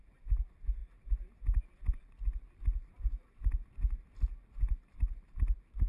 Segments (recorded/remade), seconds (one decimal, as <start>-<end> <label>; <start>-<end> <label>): 0.0-5.9 recorded

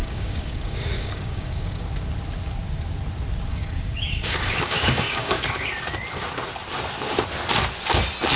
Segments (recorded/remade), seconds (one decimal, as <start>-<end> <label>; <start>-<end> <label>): 0.0-1.8 remade; 1.8-3.5 recorded; 3.5-5.7 remade; 5.7-8.4 recorded

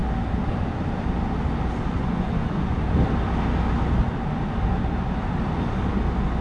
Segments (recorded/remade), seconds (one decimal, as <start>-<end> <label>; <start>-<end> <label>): 0.0-2.0 recorded; 2.0-2.8 remade; 2.8-6.4 recorded

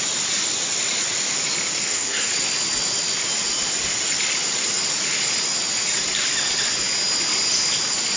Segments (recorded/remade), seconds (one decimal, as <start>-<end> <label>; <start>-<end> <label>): 0.0-1.8 recorded; 1.8-2.3 remade; 2.3-8.2 recorded

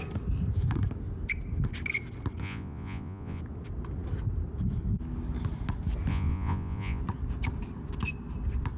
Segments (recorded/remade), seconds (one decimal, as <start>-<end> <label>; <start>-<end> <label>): 0.0-2.4 recorded; 2.4-3.4 remade; 3.4-6.1 recorded; 6.1-7.0 remade; 7.0-8.8 recorded

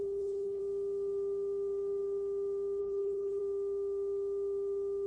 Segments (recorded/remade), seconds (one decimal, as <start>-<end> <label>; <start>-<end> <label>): 0.0-0.6 remade; 0.6-2.8 recorded; 2.8-3.4 remade; 3.4-5.1 recorded

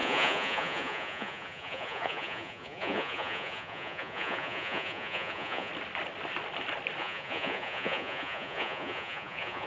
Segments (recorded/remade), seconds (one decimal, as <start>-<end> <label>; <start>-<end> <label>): 0.0-5.7 remade; 5.7-7.0 recorded; 7.0-9.7 remade